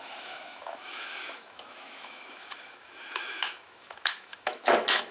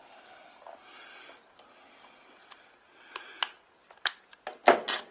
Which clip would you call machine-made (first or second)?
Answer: first